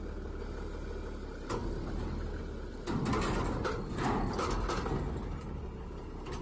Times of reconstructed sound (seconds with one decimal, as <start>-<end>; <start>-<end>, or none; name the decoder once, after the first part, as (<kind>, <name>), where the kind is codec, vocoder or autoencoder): none